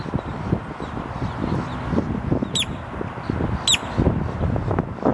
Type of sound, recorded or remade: recorded